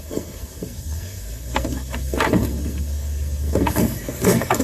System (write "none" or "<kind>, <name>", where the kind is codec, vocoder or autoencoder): codec, SNAC